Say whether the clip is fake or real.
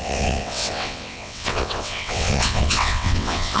fake